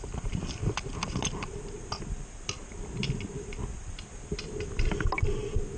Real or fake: real